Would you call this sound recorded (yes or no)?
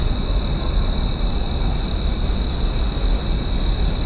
yes